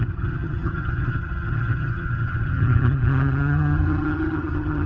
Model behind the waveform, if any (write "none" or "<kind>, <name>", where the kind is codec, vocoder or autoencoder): vocoder, HiFi-GAN